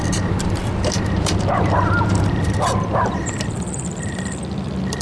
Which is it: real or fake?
fake